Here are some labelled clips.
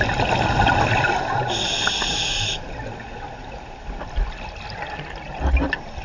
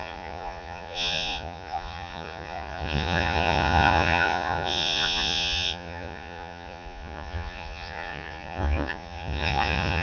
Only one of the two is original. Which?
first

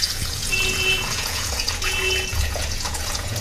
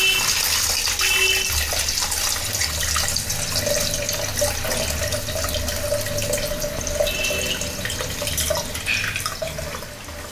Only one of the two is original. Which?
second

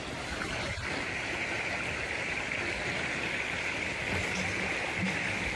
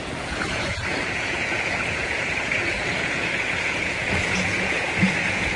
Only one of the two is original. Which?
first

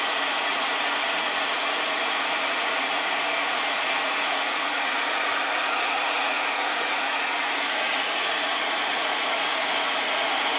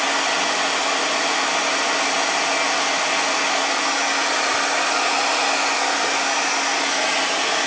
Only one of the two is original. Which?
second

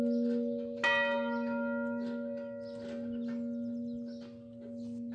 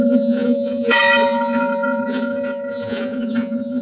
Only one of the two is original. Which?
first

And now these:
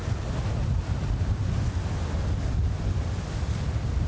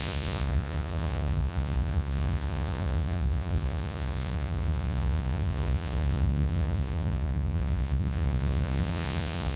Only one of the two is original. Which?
first